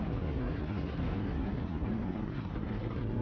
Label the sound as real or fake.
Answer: fake